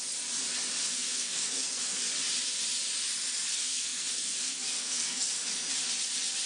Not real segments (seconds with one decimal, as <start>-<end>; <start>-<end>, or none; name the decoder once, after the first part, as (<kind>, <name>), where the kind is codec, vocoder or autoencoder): 0.8-2.1 (codec, SNAC); 3.5-5.7